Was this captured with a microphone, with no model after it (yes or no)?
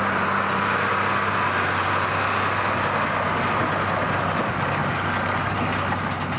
yes